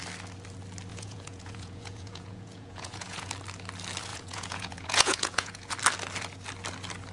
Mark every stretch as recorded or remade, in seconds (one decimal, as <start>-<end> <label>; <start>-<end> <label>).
0.0-0.9 recorded; 0.9-3.3 remade; 3.3-4.1 recorded; 4.1-5.7 remade; 5.7-7.1 recorded